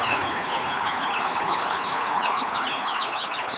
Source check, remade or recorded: remade